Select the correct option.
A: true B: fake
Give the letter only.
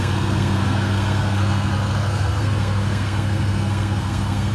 B